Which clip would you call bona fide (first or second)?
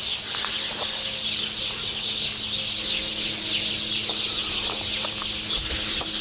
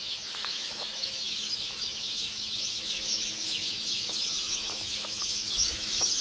first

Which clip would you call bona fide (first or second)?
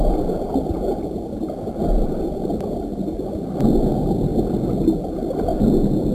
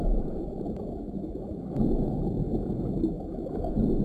first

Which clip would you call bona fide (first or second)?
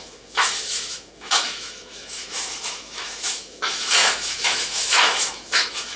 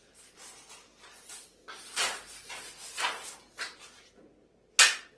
second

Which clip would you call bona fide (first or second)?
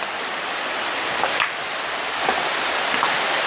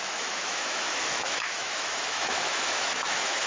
first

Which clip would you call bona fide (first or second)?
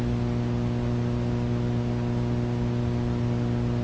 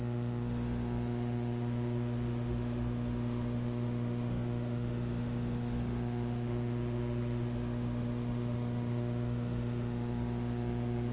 first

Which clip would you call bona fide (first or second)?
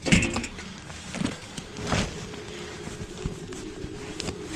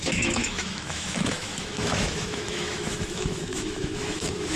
first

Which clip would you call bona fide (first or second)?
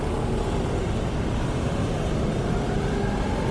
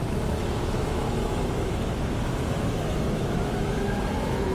first